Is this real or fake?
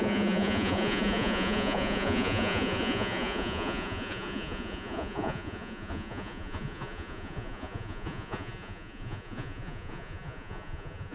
fake